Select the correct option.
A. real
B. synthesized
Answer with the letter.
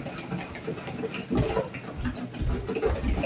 A